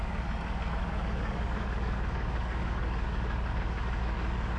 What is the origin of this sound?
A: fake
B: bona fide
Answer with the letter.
A